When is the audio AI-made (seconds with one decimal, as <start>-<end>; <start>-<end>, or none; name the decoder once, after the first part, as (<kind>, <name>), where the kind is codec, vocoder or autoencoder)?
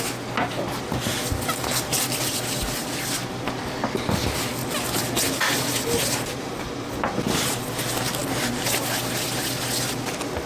2.8-3.4 (vocoder, BigVGAN v2)